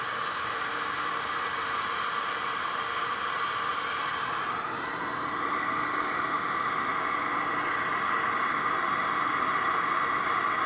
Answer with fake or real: real